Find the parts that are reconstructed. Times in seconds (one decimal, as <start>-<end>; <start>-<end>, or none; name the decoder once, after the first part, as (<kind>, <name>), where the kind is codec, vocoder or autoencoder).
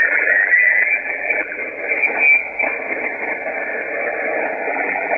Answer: 0.0-1.6 (vocoder, BigVGAN v2); 4.7-5.2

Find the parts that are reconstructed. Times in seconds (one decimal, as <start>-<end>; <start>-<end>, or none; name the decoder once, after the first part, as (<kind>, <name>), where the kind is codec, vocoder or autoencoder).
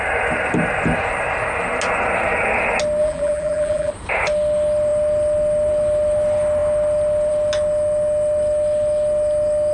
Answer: 3.0-3.9 (vocoder, BigVGAN v2)